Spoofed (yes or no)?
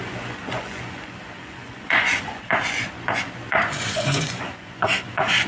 yes